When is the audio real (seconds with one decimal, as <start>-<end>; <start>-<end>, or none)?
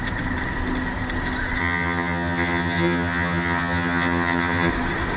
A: 0.0-1.6; 4.7-5.2